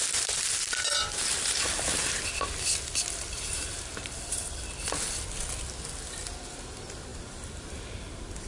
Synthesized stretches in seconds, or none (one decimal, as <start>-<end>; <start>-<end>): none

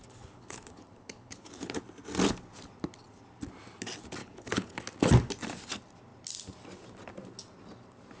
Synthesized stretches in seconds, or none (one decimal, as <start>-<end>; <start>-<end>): 0.0-1.8; 4.2-4.8

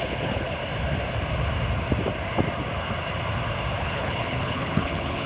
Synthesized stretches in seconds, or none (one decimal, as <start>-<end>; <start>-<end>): 0.0-0.6; 3.8-5.3

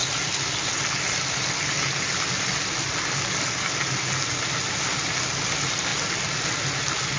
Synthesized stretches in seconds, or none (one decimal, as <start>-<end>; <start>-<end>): none

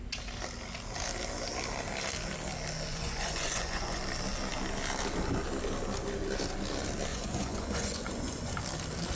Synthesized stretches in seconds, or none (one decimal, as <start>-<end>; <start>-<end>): 2.9-4.0; 7.1-8.6